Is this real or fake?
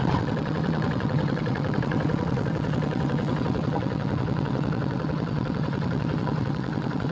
fake